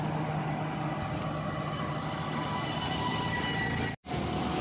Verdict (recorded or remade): recorded